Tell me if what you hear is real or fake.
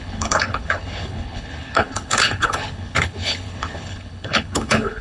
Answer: fake